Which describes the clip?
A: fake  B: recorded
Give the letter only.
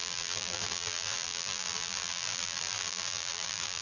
A